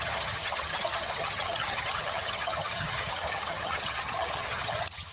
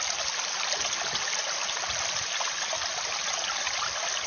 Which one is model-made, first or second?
first